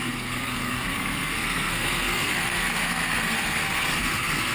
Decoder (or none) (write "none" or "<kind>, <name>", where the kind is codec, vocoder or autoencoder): codec, SNAC